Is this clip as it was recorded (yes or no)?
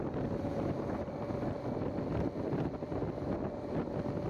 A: yes